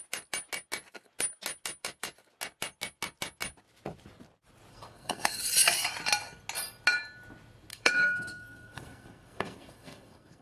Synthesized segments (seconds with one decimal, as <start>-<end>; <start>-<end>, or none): 4.7-5.4; 7.7-10.4